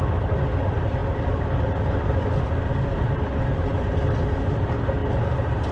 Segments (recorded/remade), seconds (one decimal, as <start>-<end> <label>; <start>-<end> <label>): 0.0-3.7 recorded; 3.7-4.4 remade; 4.4-5.0 recorded; 5.0-5.7 remade